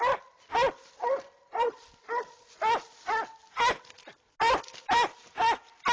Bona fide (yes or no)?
yes